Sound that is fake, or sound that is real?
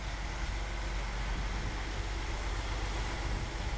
real